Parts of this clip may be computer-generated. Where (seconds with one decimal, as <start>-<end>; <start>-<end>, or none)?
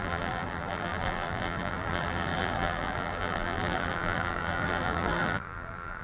0.0-6.0